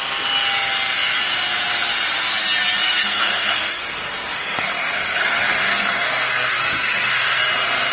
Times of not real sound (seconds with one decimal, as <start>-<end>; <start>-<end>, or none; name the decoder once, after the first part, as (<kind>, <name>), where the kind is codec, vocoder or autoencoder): 2.8-7.4 (codec, SNAC)